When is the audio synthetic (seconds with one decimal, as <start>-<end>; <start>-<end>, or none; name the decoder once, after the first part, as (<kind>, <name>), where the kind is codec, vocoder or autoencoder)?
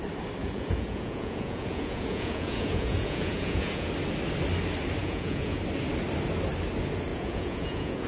0.4-3.9 (vocoder, Vocos); 5.0-5.6; 7.1-8.1